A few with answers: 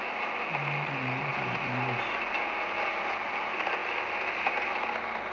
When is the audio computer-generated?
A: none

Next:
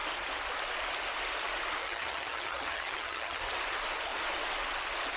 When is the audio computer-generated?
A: 1.8-3.4

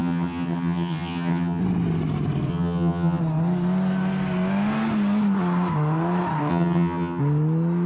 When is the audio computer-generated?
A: 0.0-1.6; 2.5-3.2; 6.5-7.2